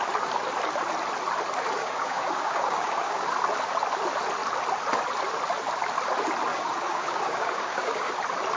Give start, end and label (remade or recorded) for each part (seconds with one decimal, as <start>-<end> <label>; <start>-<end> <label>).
0.0-1.8 recorded; 1.8-3.3 remade; 3.3-6.5 recorded; 6.5-8.1 remade; 8.1-8.6 recorded